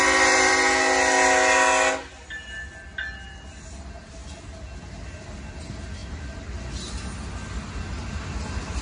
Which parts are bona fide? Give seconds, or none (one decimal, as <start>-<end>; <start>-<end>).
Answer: 0.0-8.8